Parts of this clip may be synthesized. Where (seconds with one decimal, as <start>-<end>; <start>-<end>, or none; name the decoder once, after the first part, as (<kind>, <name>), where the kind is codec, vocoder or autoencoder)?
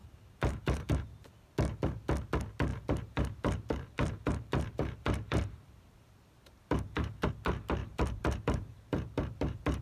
0.0-1.3 (vocoder, BigVGAN v2); 2.7-7.3; 7.8-9.8